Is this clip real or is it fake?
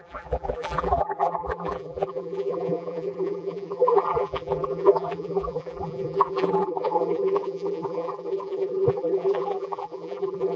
fake